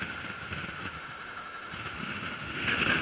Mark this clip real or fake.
fake